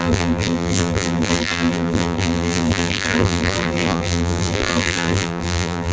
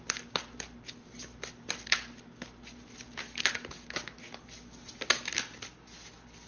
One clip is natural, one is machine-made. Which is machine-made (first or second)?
first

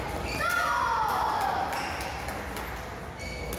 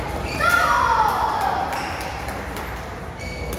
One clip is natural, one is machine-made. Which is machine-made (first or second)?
second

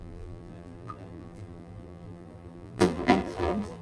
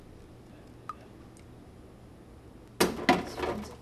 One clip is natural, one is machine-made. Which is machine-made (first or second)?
first